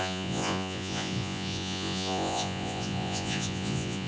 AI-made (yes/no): yes